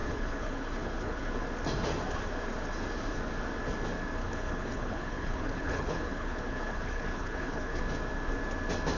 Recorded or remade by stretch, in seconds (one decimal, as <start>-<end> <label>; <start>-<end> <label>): 0.0-1.3 remade; 1.3-4.2 recorded; 4.2-7.8 remade; 7.8-9.0 recorded